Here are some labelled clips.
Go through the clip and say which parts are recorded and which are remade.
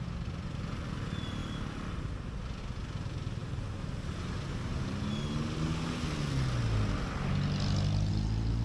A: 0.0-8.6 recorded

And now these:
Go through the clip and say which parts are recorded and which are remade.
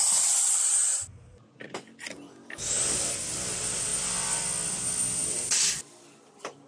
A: 0.0-6.7 recorded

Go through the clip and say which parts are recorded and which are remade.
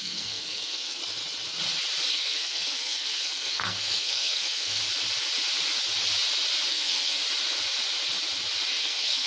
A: 0.0-1.0 remade; 1.0-2.1 recorded; 2.1-4.8 remade; 4.8-6.7 recorded; 6.7-7.2 remade; 7.2-8.8 recorded; 8.8-9.3 remade